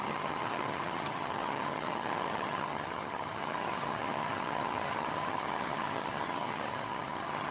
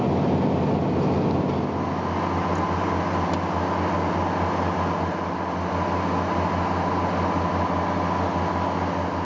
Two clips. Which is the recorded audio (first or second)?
second